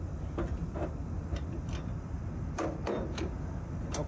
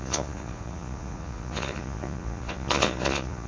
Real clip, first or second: first